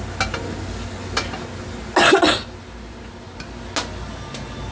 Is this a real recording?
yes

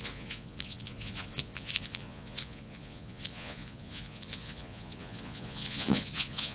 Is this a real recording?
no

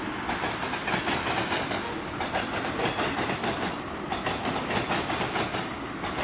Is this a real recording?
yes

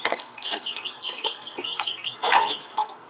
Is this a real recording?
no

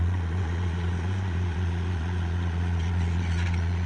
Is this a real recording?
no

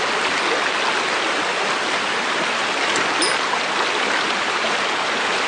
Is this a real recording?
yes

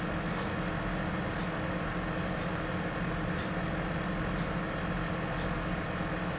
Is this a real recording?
yes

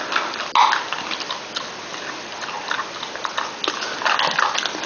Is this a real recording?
yes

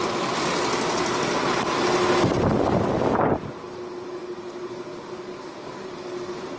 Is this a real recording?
yes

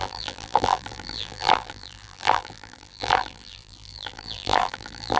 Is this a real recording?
no